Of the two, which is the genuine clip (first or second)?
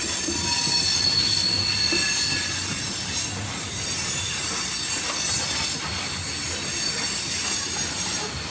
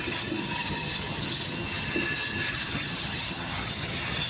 first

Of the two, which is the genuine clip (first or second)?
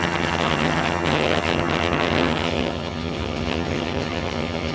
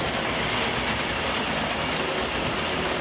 second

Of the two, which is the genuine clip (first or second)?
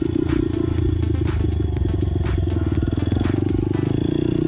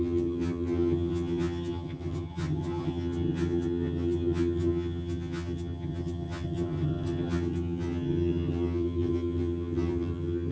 first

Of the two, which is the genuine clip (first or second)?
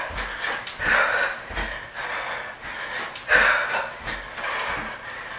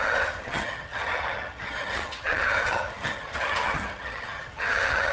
first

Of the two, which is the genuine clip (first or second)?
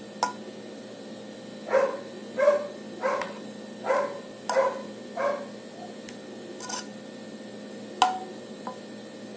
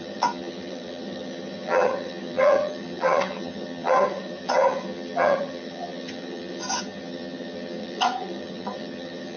first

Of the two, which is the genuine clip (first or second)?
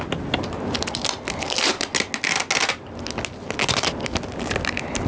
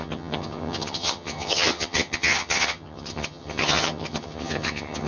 first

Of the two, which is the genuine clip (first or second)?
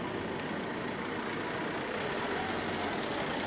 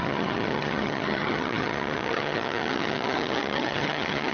first